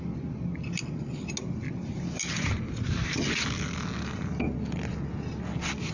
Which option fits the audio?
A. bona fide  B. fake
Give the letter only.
A